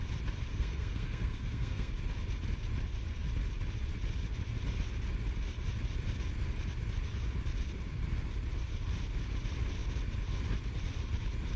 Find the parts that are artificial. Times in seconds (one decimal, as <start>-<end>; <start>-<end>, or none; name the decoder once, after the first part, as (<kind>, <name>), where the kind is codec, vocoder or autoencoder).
0.5-1.9 (codec, SNAC)